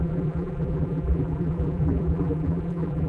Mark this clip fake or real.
fake